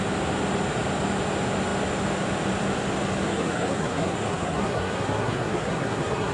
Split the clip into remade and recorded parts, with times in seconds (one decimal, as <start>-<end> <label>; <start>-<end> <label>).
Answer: 0.0-3.3 recorded; 3.3-6.3 remade